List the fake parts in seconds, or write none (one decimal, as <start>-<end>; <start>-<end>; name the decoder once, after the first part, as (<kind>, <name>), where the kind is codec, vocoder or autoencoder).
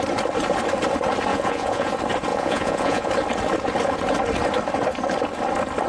1.3-1.9 (vocoder, Vocos); 2.3-3.1